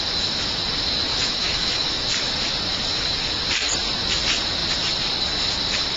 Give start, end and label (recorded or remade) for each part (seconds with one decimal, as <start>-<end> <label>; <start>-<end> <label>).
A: 0.0-1.1 recorded; 1.1-1.9 remade; 1.9-6.0 recorded